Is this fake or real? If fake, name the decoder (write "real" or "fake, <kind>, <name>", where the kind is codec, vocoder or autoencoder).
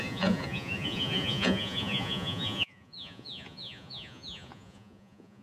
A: fake, vocoder, Vocos